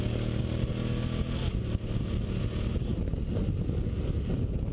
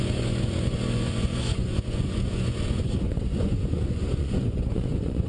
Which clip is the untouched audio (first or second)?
first